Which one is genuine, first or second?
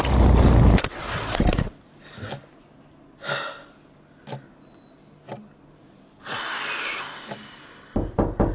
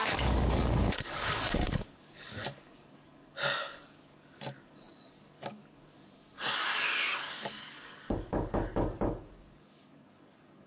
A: first